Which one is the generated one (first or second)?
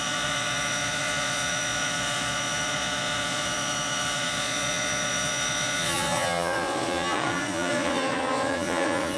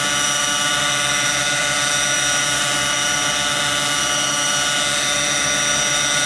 first